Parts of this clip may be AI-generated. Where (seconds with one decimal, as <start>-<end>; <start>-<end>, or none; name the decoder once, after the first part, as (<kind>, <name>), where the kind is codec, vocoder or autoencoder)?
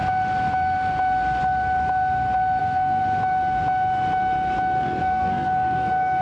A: 2.6-3.0 (codec, SNAC); 5.0-6.2